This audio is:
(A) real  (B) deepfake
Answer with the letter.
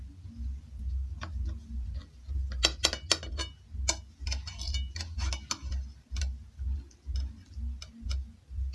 A